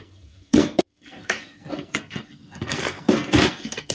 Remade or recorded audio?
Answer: remade